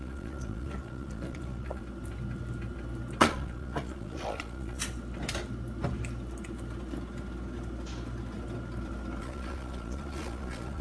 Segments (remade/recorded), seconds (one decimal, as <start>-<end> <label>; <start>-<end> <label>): 0.0-1.8 remade; 1.8-3.2 recorded; 3.2-4.8 remade; 4.8-9.2 recorded; 9.2-10.8 remade

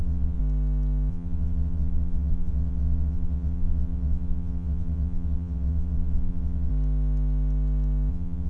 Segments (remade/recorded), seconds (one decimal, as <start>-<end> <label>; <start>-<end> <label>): 0.0-0.4 remade; 0.4-1.1 recorded; 1.1-6.7 remade; 6.7-8.1 recorded; 8.1-8.5 remade

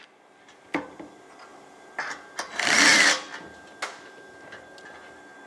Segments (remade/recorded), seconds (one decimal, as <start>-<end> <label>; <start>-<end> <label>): 0.0-5.5 recorded